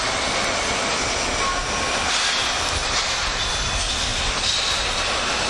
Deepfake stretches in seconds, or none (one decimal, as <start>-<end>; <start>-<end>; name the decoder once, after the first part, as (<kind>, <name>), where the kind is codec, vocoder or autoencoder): 2.8-3.5 (vocoder, BigVGAN v2); 4.1-4.6